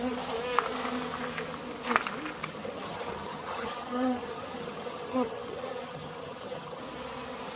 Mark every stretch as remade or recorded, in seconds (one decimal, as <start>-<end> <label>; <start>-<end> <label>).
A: 0.0-2.4 recorded; 2.4-6.8 remade; 6.8-7.6 recorded

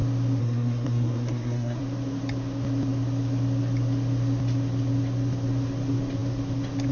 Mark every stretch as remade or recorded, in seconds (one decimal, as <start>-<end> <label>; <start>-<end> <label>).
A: 0.0-0.4 recorded; 0.4-1.8 remade; 1.8-6.9 recorded

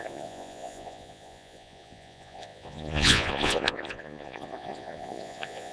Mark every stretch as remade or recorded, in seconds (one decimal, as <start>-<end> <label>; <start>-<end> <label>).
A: 0.0-5.7 remade